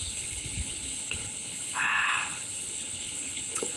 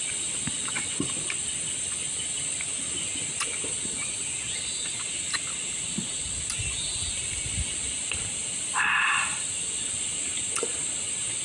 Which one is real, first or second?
second